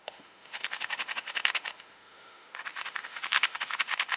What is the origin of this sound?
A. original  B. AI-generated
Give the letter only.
B